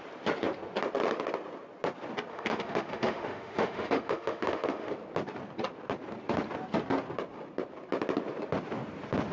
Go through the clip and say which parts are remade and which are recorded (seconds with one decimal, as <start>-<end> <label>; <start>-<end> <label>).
0.0-2.3 recorded; 2.3-4.9 remade; 4.9-9.3 recorded